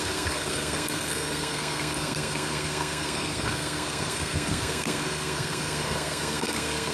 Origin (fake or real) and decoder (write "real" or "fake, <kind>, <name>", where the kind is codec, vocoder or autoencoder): fake, codec, SNAC